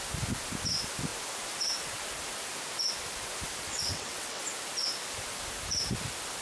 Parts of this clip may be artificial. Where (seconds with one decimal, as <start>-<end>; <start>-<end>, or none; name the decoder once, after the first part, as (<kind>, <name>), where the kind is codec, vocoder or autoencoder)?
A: 3.7-4.4 (vocoder, WaveNeXt)